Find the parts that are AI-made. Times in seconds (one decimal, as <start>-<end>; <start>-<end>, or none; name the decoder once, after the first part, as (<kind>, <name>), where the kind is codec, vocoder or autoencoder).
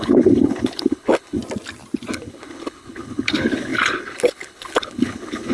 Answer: 0.0-1.4 (codec, HILCodec); 2.1-5.5